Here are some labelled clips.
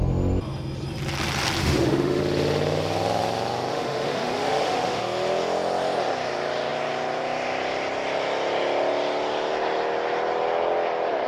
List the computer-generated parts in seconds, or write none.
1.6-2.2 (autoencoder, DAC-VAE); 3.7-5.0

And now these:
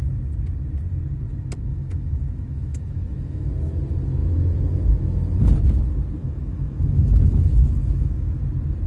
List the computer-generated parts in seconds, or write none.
1.7-3.5 (autoencoder, DAC-VAE); 6.2-8.4

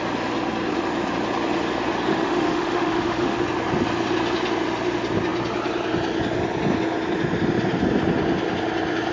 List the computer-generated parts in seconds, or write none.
2.1-3.4 (autoencoder, DAC-VAE)

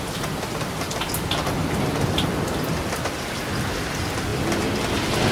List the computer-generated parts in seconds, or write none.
none

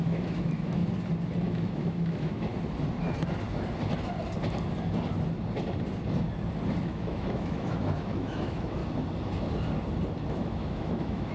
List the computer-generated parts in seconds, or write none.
0.0-0.8 (autoencoder, DAC-VAE); 1.4-2.5; 6.8-8.8; 10.3-11.3